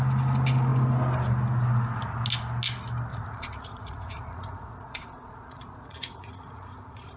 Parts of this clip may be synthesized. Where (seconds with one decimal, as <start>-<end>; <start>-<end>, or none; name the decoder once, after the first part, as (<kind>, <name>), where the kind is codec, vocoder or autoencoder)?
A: 3.1-7.2 (vocoder, Vocos)